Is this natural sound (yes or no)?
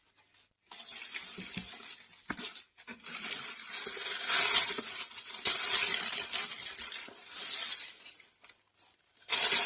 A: yes